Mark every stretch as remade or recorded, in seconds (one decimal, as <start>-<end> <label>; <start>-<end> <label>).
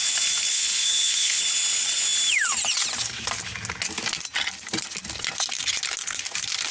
0.0-0.5 recorded; 0.5-1.4 remade; 1.4-6.7 recorded